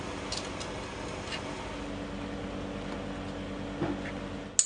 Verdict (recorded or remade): recorded